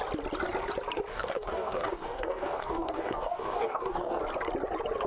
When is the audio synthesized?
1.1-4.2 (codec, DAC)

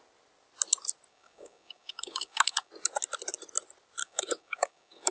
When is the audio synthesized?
1.1-2.7 (codec, DAC); 4.0-5.1